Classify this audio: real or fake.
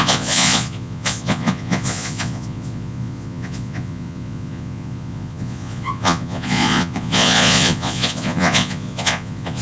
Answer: fake